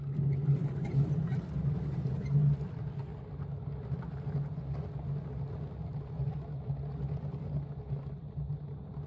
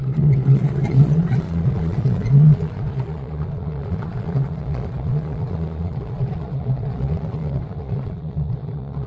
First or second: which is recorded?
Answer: first